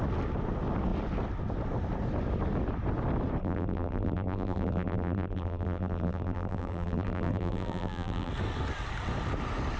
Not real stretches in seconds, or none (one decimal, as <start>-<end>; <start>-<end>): 3.4-8.3